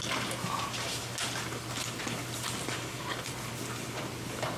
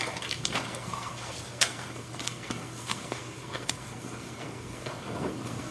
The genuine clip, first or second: first